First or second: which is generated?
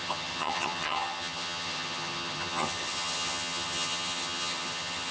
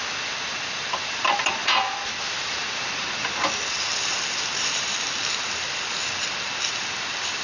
first